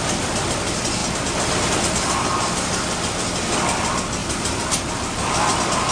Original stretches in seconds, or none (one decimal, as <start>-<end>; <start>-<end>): 0.0-5.9